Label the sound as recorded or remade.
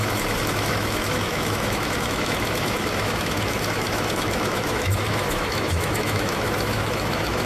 remade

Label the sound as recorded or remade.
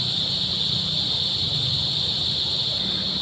recorded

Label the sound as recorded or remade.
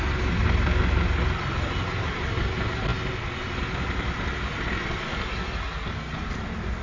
recorded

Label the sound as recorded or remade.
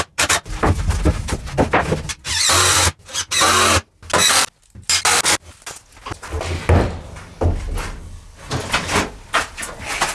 recorded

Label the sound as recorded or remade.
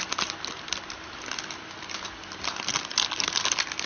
recorded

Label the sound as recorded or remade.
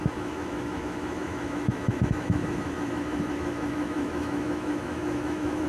remade